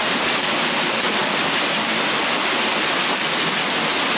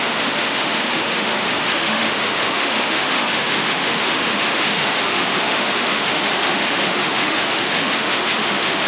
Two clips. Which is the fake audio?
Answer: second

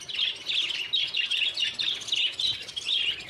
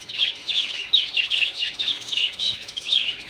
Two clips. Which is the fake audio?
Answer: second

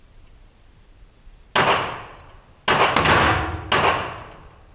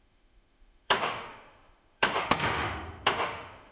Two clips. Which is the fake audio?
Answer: second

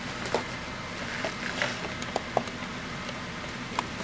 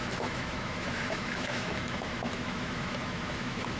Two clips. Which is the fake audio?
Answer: second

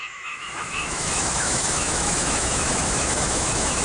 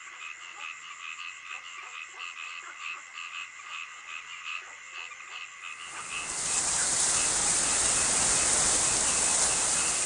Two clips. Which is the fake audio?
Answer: first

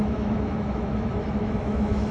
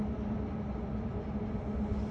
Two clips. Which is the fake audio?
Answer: first